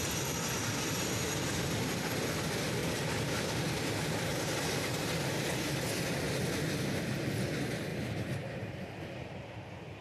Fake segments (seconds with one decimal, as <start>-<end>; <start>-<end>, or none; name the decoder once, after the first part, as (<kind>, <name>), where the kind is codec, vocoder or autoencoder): 2.8-3.4 (vocoder, BigVGAN v2); 4.3-5.3; 7.9-8.8